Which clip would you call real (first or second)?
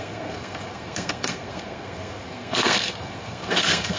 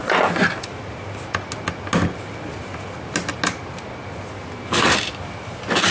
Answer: second